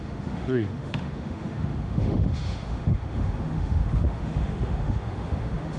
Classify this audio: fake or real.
fake